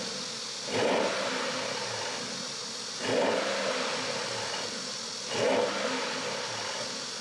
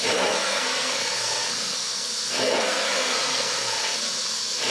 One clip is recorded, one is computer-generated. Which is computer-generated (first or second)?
second